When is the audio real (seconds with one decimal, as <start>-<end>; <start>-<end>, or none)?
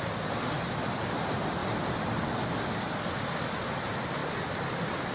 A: 0.0-5.1